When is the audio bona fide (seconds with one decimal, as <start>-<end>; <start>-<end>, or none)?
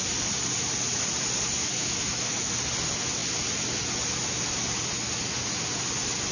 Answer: 0.0-1.6; 2.5-6.3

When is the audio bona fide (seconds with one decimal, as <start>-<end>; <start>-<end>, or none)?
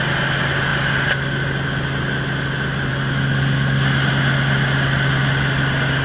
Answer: 0.0-6.0